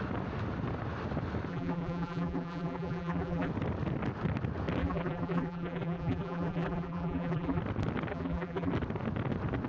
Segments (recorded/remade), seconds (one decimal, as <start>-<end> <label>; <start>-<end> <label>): 0.0-1.5 recorded; 1.5-3.5 remade; 3.5-4.8 recorded; 4.8-7.6 remade; 7.6-8.1 recorded; 8.1-8.7 remade; 8.7-9.7 recorded